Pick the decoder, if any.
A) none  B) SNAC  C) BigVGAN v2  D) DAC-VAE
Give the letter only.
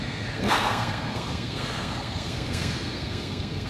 B